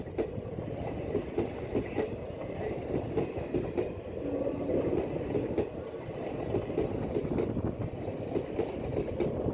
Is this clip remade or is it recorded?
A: recorded